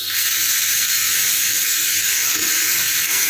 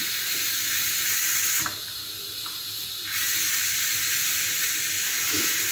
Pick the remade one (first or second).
first